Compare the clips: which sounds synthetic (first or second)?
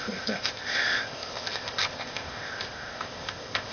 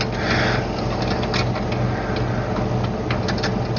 first